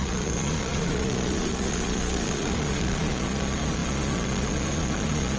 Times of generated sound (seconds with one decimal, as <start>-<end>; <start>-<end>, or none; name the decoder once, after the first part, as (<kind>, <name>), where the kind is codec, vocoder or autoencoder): 0.0-5.4 (vocoder, Vocos)